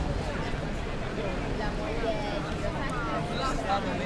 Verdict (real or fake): real